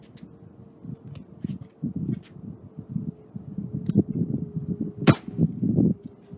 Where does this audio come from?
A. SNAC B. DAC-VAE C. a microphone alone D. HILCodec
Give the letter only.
C